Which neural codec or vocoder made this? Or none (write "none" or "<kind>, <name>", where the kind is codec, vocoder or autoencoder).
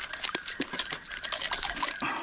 none